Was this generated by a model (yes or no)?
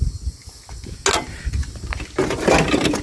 no